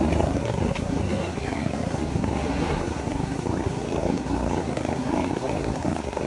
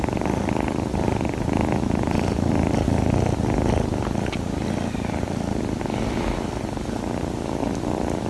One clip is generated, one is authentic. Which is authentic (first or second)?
second